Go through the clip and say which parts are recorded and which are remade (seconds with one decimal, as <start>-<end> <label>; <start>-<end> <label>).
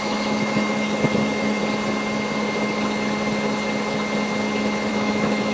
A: 0.0-1.6 remade; 1.6-4.9 recorded; 4.9-5.5 remade